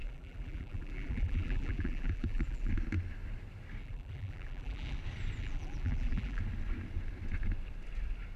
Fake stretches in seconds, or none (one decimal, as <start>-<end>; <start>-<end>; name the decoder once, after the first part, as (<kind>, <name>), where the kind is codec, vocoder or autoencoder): 0.0-2.7 (vocoder, BigVGAN v2); 3.8-5.0; 5.4-6.4